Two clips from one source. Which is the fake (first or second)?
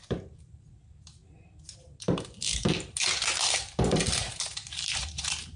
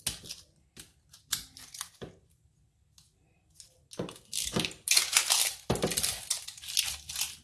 first